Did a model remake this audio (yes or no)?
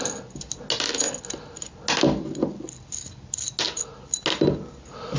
no